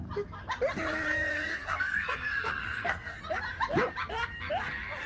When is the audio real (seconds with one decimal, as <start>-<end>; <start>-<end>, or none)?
0.0-1.3; 3.2-5.1